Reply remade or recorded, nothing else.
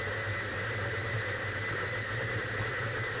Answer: recorded